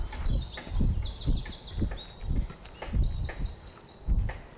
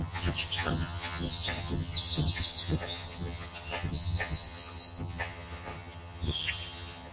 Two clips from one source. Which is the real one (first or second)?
first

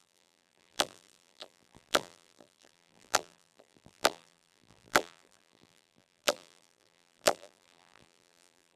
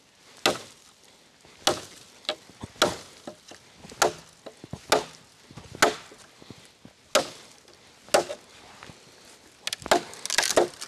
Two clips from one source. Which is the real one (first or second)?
second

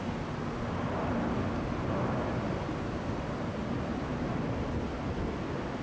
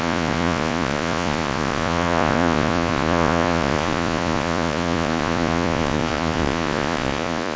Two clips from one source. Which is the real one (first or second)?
first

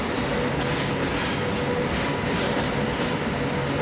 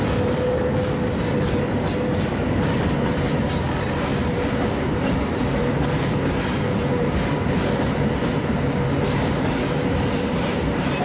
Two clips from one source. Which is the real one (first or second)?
first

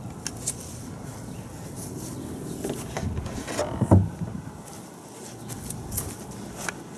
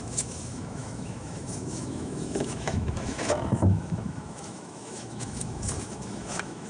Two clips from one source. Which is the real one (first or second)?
first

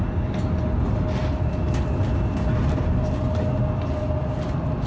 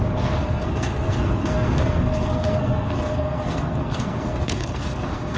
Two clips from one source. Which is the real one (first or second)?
first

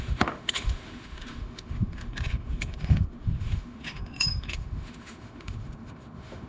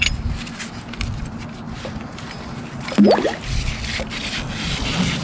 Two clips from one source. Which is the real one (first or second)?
second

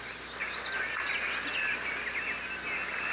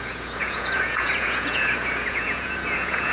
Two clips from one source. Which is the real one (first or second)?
first